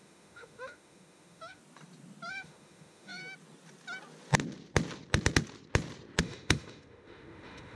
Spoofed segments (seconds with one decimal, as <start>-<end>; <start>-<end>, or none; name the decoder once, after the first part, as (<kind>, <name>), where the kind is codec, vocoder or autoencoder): 0.0-1.6 (autoencoder, DAC-VAE); 2.3-3.2; 6.2-7.8